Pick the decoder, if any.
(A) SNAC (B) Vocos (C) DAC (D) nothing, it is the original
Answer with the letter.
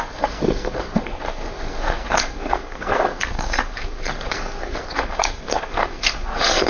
A